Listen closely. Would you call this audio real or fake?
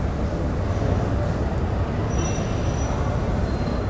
real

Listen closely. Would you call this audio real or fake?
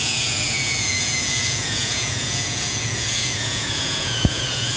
fake